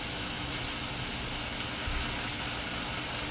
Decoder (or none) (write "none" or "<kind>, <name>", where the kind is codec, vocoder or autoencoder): none